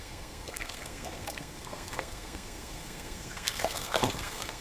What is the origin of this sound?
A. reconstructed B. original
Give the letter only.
A